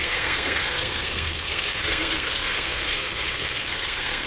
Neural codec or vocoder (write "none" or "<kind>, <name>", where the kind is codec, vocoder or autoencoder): codec, SNAC